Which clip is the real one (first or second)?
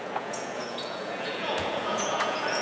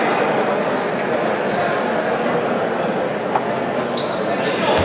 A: second